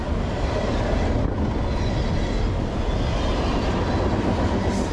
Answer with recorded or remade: recorded